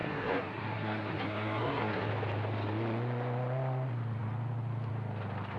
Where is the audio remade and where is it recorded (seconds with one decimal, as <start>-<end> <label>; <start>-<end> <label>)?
0.0-2.1 remade; 2.1-5.6 recorded